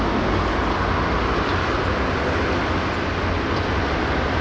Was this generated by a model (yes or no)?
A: no